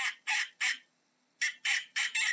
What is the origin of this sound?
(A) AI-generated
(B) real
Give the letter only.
B